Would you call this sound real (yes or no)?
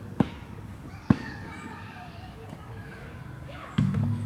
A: no